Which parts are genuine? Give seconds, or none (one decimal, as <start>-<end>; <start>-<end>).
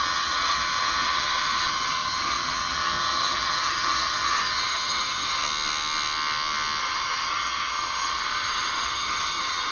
5.4-6.8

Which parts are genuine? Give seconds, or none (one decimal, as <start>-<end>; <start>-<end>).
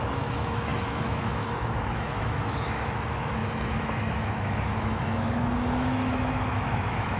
none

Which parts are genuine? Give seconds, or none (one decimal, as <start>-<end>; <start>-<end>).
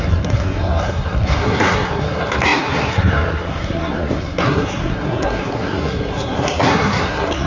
none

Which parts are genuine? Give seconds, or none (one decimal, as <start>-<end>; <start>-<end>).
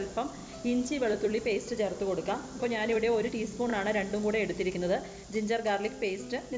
0.0-0.4; 3.3-6.6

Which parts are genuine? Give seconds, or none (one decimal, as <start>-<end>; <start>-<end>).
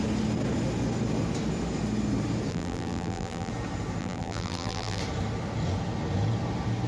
0.0-2.5; 3.5-4.0; 5.0-6.9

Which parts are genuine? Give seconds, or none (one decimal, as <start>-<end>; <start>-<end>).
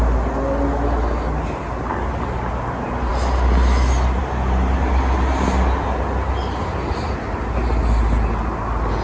0.0-9.0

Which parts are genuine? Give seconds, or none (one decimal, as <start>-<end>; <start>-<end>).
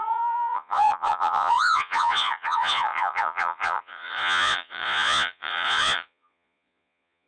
none